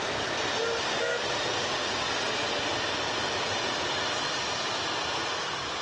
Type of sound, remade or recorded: recorded